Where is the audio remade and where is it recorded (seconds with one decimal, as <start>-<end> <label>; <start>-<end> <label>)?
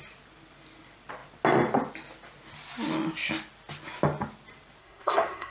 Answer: 0.0-4.8 recorded; 4.8-5.5 remade